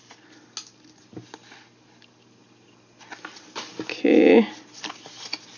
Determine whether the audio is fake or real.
real